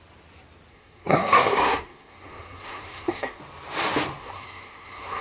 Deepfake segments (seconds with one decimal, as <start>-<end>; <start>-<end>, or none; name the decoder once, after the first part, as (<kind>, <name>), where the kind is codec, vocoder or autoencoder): 0.7-3.4 (codec, SNAC); 4.2-5.2